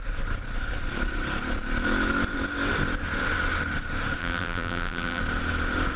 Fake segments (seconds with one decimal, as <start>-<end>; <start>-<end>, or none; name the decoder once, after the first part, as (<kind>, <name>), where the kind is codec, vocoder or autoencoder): 4.2-5.2 (vocoder, BigVGAN v2)